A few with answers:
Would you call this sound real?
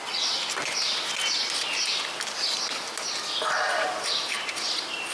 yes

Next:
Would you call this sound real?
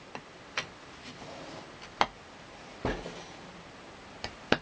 yes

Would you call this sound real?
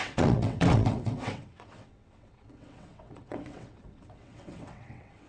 no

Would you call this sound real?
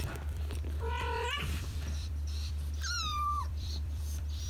no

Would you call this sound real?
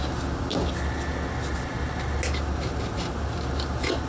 yes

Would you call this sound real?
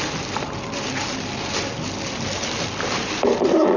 yes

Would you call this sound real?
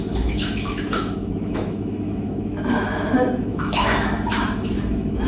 no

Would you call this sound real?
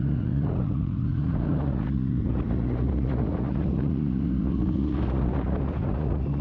no